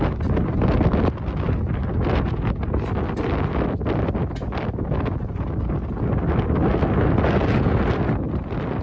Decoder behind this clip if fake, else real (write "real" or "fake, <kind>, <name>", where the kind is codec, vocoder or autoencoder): real